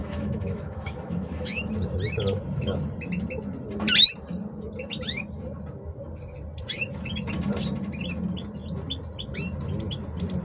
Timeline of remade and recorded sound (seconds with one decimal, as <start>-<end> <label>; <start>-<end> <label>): 0.0-1.7 remade; 1.7-10.4 recorded